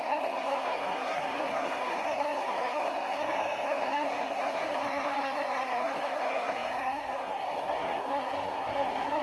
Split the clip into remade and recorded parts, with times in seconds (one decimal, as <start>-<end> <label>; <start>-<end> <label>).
0.0-9.2 remade